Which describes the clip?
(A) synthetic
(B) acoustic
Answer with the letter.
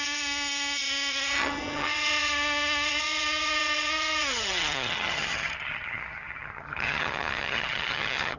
A